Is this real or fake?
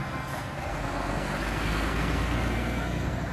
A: fake